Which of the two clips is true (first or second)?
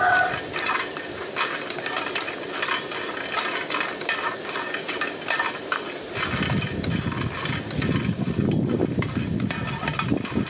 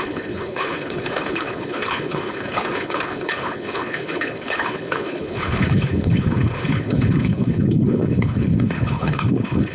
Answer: first